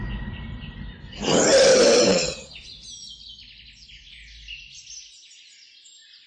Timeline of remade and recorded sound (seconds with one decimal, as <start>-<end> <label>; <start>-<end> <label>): 0.0-2.1 recorded; 2.1-2.7 remade; 2.7-6.3 recorded